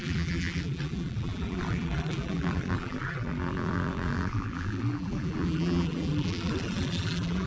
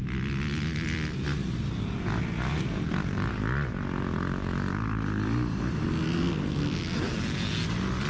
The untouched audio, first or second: second